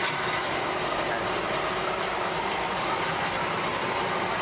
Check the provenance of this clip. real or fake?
real